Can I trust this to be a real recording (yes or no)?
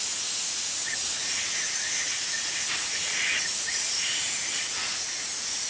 no